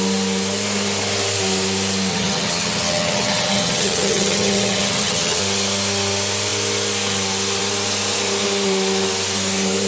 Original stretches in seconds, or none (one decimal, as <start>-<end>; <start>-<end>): 0.0-2.1; 5.4-9.9